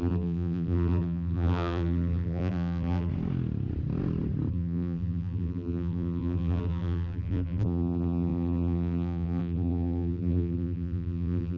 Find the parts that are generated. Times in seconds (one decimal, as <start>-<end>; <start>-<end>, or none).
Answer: 0.0-3.1; 4.5-11.6